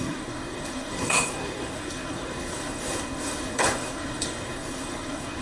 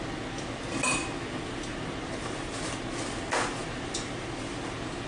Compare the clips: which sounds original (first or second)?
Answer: second